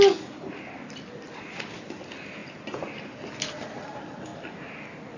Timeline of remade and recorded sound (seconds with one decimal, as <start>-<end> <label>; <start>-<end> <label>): 0.0-5.2 recorded